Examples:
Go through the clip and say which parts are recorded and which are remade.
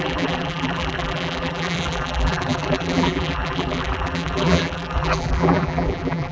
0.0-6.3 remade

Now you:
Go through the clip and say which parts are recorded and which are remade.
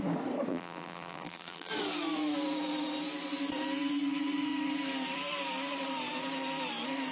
0.0-0.5 recorded; 0.5-1.7 remade; 1.7-7.1 recorded